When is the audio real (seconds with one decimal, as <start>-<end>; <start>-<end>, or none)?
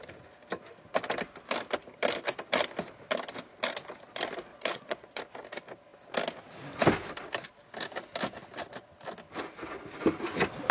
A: 0.0-4.5; 5.2-10.7